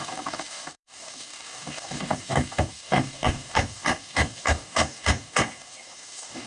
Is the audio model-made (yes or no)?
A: yes